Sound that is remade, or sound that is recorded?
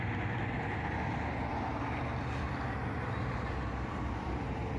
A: recorded